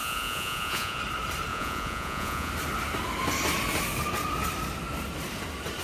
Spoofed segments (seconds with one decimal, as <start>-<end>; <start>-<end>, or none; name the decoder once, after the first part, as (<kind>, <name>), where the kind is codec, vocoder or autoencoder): 0.0-1.0 (vocoder, Vocos); 1.5-2.5